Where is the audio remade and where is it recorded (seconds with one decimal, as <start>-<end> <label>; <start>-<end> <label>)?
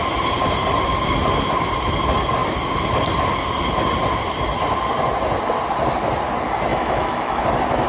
0.0-6.7 recorded; 6.7-7.4 remade; 7.4-7.9 recorded